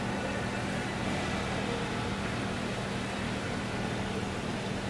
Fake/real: real